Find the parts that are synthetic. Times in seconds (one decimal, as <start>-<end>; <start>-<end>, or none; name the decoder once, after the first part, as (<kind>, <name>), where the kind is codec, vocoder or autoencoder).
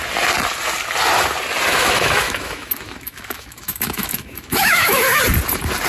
1.7-5.2 (autoencoder, DAC-VAE)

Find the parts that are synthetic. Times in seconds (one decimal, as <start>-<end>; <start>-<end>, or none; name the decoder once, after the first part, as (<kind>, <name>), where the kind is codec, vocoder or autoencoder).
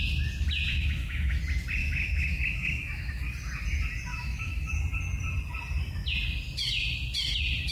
0.7-1.4 (autoencoder, DAC-VAE); 1.8-3.2; 4.1-4.7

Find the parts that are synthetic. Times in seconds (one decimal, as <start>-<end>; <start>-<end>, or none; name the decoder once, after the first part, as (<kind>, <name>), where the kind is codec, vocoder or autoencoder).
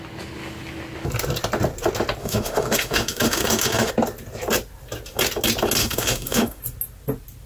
2.2-3.9 (autoencoder, DAC-VAE); 5.8-6.6